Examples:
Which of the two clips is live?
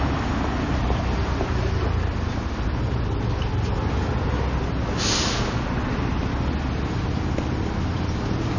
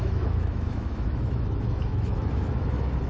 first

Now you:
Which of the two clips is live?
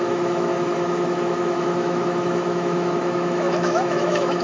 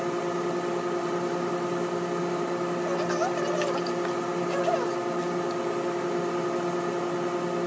second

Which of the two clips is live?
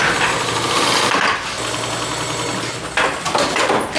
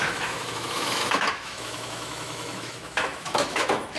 first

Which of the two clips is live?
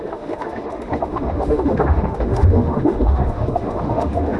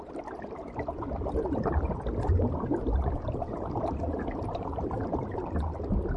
second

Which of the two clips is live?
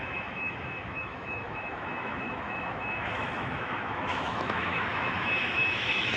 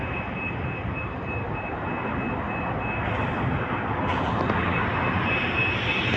second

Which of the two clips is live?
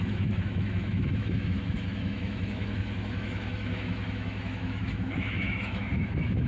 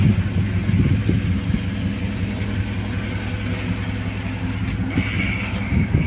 second